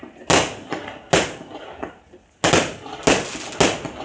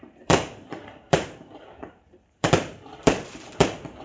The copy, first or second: second